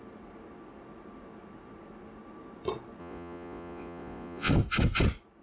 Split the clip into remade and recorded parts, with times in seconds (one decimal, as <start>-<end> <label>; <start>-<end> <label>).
0.0-3.0 recorded; 3.0-4.5 remade; 4.5-5.4 recorded